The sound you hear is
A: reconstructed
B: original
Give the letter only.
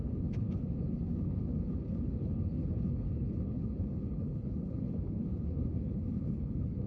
A